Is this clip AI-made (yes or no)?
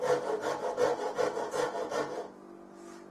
no